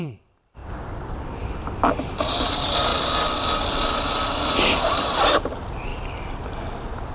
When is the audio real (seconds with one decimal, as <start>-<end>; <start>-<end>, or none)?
0.6-2.3; 2.9-4.8; 5.9-7.1